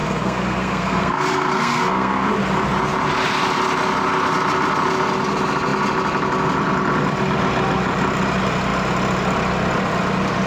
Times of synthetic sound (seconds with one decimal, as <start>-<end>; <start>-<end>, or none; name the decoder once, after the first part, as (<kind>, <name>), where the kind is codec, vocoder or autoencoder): 0.0-2.3 (codec, SNAC)